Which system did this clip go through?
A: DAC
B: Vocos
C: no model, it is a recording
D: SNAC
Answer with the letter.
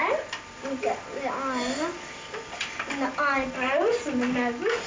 C